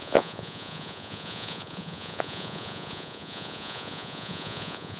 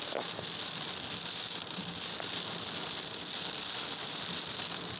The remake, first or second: first